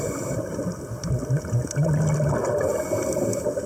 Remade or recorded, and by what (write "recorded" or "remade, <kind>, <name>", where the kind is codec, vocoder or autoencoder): recorded